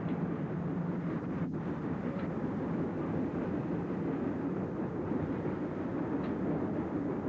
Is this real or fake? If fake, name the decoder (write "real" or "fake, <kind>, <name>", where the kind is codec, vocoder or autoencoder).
real